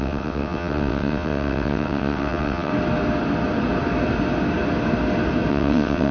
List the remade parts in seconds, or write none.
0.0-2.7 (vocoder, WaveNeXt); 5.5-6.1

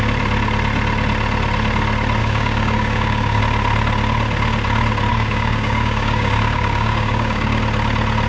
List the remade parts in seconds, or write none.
2.2-3.4 (codec, DAC); 5.1-7.6

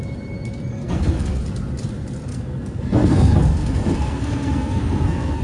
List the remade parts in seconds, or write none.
0.7-1.4 (codec, SNAC); 2.3-5.4

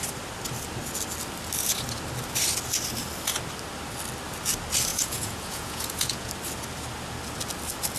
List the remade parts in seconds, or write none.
4.9-6.3 (vocoder, Vocos)

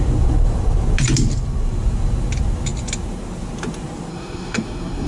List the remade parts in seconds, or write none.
4.1-5.1 (codec, SNAC)

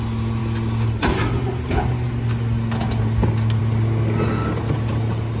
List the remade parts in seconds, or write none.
none

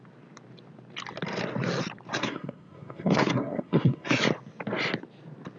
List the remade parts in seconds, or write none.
2.2-4.1 (codec, SNAC)

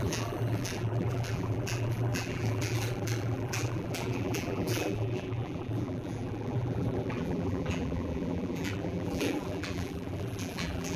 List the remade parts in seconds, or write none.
0.0-11.0 (vocoder, BigVGAN v2)